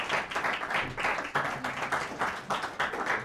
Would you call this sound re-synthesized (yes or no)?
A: no